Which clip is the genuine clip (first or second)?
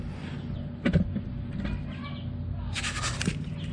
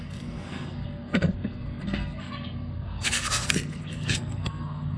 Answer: first